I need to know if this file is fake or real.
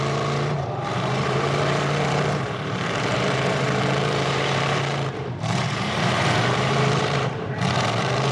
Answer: fake